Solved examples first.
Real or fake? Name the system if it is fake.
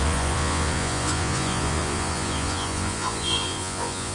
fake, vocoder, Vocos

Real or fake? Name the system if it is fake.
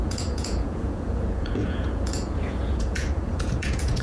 fake, vocoder, Vocos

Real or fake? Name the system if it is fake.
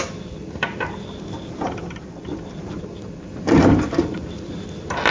real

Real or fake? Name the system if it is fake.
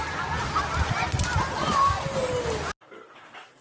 real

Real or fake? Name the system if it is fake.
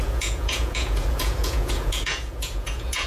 fake, vocoder, Vocos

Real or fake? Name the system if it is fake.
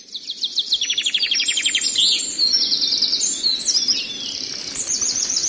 real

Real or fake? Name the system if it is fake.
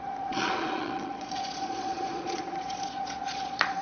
fake, vocoder, Vocos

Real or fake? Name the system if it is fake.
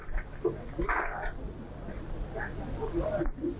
real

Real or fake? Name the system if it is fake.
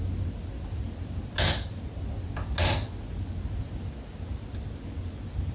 real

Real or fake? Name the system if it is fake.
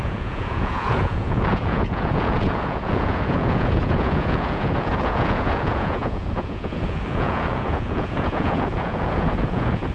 fake, vocoder, Vocos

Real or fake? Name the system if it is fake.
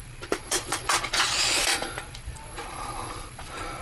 fake, vocoder, Vocos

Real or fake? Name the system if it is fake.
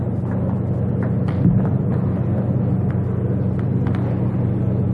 real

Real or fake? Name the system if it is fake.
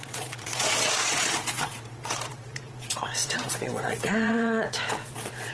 fake, vocoder, Vocos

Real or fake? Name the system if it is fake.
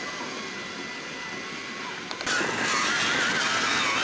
real